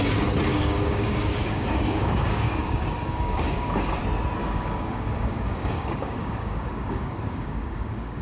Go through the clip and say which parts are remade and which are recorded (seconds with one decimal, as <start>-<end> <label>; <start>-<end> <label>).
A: 0.0-0.5 recorded; 0.5-4.0 remade; 4.0-4.4 recorded; 4.4-8.2 remade